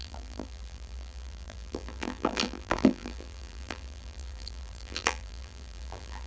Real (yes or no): no